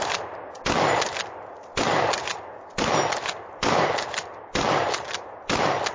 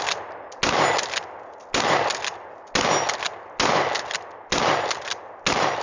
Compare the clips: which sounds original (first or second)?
second